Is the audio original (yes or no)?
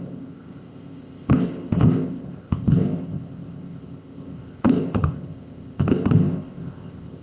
no